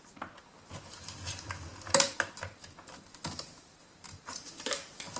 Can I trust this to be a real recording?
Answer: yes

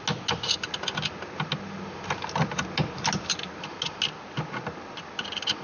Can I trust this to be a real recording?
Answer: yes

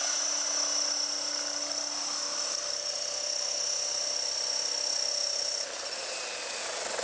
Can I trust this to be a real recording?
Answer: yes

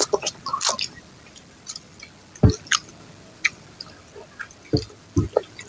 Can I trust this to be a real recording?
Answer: yes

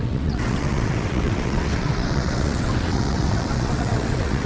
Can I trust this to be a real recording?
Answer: no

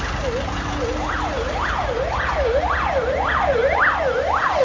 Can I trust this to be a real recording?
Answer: yes